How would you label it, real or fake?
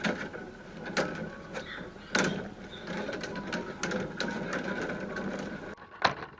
real